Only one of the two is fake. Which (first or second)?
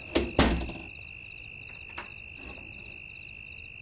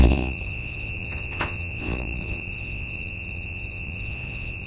second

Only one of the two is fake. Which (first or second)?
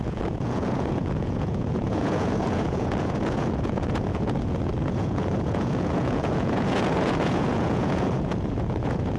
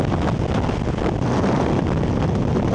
first